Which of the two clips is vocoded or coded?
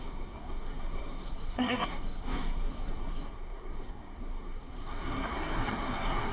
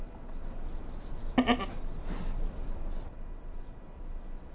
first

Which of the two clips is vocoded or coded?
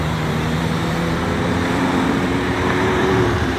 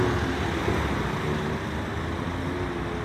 first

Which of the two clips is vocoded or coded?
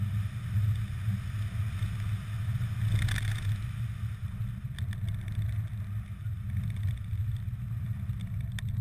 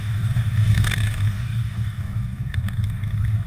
second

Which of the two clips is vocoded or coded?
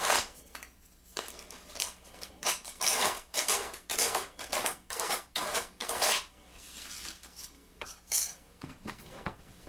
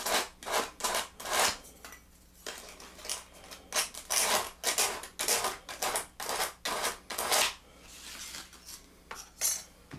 first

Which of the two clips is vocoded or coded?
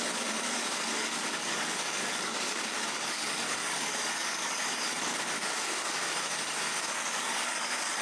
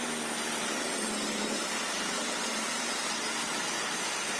first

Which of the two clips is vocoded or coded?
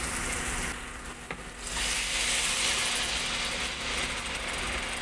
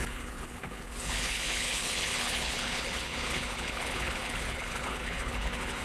second